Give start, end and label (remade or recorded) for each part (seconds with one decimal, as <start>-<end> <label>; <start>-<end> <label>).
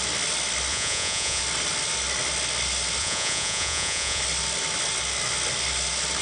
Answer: 0.0-0.7 recorded; 0.7-1.4 remade; 1.4-3.0 recorded; 3.0-4.2 remade; 4.2-6.2 recorded